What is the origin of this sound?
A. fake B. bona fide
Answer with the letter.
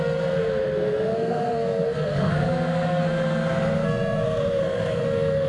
A